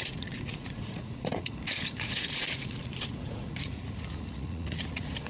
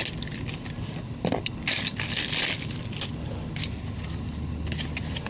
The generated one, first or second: first